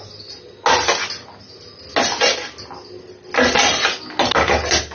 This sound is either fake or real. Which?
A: real